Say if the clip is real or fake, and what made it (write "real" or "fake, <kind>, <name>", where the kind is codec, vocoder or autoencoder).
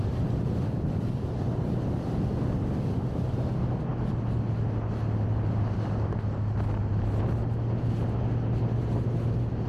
real